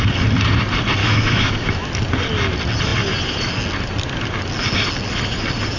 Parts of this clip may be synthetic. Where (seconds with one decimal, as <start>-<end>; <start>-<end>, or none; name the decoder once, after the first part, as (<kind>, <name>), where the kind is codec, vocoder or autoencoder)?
1.0-1.9 (autoencoder, DAC-VAE)